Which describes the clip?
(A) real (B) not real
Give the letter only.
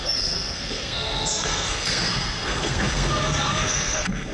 B